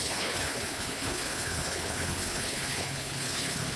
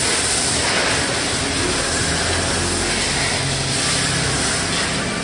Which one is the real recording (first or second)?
second